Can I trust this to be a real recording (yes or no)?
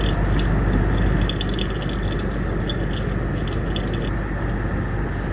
yes